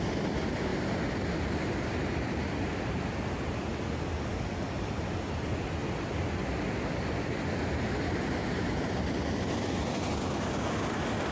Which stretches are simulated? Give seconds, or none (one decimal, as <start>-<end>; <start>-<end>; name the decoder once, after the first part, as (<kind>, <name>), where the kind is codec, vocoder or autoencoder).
5.8-7.8 (vocoder, BigVGAN v2)